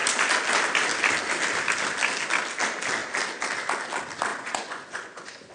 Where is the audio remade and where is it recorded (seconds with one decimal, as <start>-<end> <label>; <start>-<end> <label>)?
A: 0.0-4.3 recorded; 4.3-5.5 remade